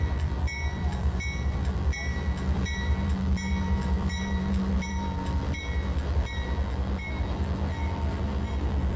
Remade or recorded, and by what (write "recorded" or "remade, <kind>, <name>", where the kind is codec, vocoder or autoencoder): remade, vocoder, BigVGAN v2